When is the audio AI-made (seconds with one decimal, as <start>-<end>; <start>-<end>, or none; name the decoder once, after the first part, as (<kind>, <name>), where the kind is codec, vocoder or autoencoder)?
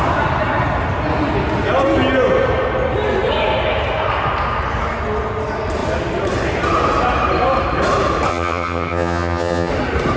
8.3-9.7 (vocoder, HiFi-GAN)